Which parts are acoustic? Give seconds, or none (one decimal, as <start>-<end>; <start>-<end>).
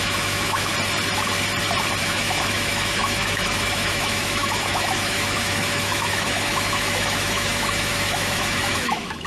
0.7-2.0